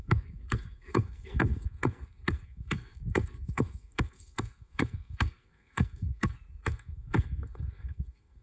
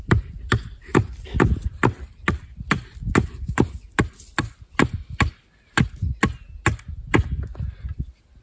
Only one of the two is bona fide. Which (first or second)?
second